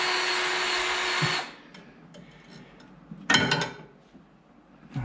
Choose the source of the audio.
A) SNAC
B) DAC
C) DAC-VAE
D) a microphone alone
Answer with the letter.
D